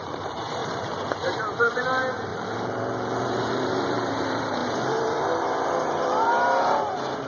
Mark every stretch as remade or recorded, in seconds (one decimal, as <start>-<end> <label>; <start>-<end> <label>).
0.0-2.3 remade; 2.3-3.2 recorded; 3.2-7.3 remade